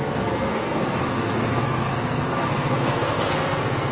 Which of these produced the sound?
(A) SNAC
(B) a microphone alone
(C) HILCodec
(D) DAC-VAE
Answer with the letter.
A